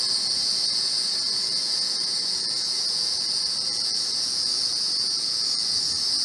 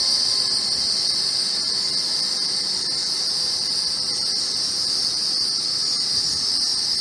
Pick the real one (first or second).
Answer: second